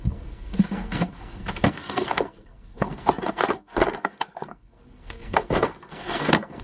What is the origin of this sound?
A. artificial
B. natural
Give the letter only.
A